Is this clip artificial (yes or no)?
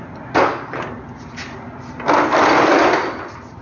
no